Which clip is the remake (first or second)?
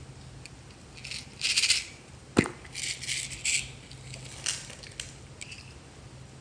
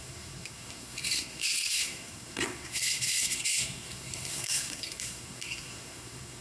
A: second